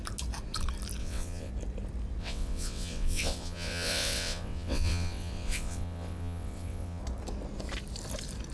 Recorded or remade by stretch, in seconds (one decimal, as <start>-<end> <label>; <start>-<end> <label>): 0.0-1.0 recorded; 1.0-1.5 remade; 1.5-2.2 recorded; 2.2-7.0 remade; 7.0-8.5 recorded

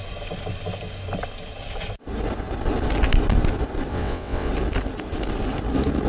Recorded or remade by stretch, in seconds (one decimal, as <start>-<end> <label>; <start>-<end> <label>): 0.0-3.9 recorded; 3.9-4.5 remade; 4.5-6.1 recorded

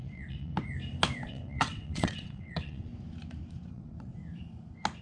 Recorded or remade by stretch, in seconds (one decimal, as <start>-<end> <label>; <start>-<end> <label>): 0.0-0.5 remade; 0.5-1.3 recorded; 1.3-2.9 remade; 2.9-3.7 recorded; 3.7-4.2 remade; 4.2-5.0 recorded